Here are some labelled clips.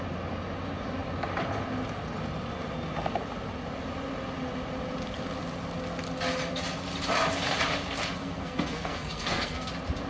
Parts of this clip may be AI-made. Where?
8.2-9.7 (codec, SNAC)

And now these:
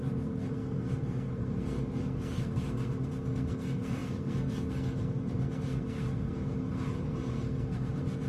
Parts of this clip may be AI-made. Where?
0.0-8.3 (codec, SNAC)

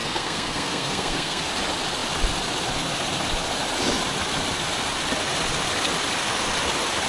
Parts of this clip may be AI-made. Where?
0.0-1.4 (codec, SNAC)

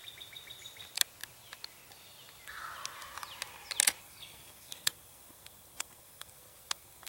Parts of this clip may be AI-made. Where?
4.0-7.1 (codec, SNAC)

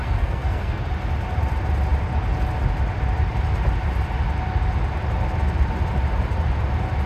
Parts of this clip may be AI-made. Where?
0.0-0.8 (codec, SNAC)

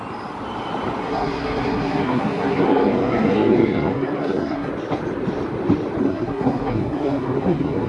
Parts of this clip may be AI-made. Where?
1.0-4.7 (codec, SNAC); 6.0-7.9

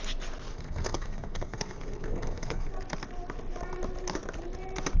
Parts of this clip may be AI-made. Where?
0.5-2.7 (codec, SNAC)

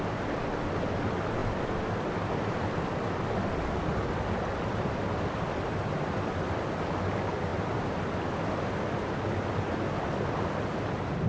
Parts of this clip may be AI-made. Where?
none